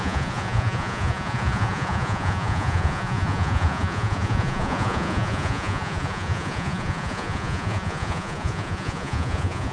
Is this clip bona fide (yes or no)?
no